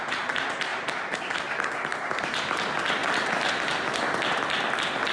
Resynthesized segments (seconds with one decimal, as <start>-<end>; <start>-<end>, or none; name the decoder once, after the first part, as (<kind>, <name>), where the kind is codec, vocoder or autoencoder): 0.7-1.3 (vocoder, BigVGAN v2); 1.9-2.4; 3.0-4.0

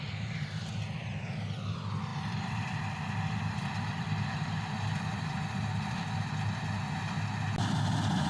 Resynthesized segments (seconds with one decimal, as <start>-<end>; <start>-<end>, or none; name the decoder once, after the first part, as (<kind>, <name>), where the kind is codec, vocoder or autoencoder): 2.1-2.8 (vocoder, BigVGAN v2)